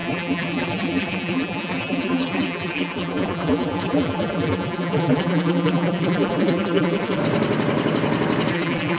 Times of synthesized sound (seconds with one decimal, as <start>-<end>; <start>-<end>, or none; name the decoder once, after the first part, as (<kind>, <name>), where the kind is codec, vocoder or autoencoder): 0.0-7.2 (vocoder, BigVGAN v2); 8.5-9.0